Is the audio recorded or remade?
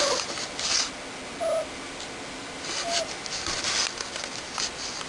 recorded